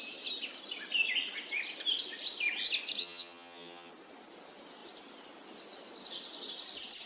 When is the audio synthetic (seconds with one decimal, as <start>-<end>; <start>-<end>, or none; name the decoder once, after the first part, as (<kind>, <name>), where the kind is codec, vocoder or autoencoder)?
3.0-3.9 (vocoder, HiFi-GAN)